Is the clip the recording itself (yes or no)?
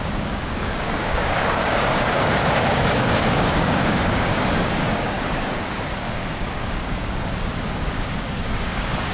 no